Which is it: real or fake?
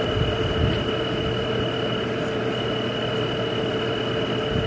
real